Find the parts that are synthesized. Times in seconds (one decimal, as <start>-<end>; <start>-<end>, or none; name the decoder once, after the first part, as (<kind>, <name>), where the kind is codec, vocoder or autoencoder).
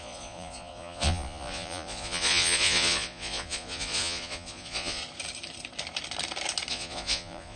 0.0-5.0 (vocoder, Vocos); 6.7-7.6